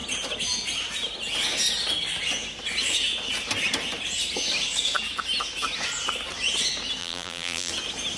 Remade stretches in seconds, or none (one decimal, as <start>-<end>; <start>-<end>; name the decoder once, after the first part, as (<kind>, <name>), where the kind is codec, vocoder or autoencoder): 7.0-7.7 (vocoder, BigVGAN v2)